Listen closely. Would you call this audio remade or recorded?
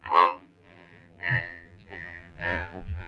remade